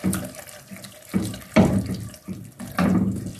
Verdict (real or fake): real